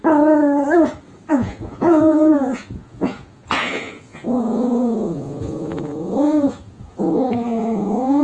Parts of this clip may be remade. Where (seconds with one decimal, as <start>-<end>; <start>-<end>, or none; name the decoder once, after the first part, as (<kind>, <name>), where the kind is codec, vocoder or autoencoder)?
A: 1.3-8.2 (vocoder, Vocos)